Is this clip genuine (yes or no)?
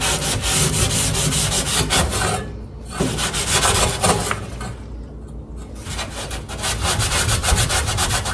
yes